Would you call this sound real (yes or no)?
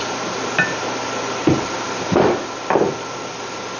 yes